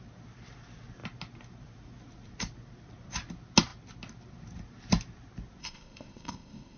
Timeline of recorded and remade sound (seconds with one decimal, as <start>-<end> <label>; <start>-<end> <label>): 0.0-5.6 recorded; 5.6-6.8 remade